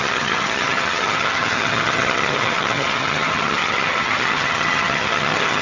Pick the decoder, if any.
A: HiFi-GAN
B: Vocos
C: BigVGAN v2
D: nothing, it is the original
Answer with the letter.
A